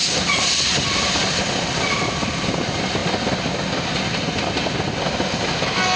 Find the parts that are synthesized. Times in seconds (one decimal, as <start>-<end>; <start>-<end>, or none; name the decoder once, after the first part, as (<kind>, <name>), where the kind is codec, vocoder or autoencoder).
0.0-1.4 (vocoder, BigVGAN v2)